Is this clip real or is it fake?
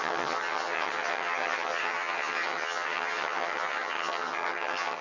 fake